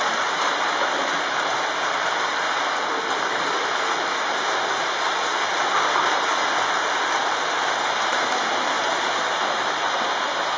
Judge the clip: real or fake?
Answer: real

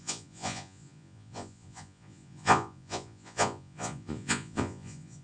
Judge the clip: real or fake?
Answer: fake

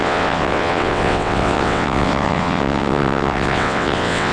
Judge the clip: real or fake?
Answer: fake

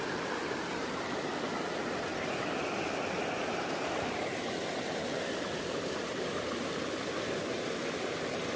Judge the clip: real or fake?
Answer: real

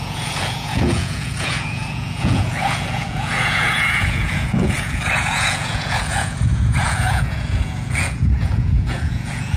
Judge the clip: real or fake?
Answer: fake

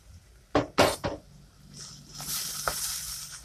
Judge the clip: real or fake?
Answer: real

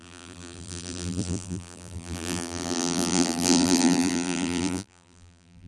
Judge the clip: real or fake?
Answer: fake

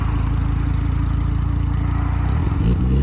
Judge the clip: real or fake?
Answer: real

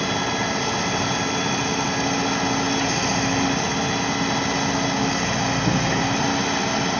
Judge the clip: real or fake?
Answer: real